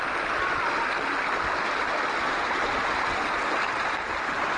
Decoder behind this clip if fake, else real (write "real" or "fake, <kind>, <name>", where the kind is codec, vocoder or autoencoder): real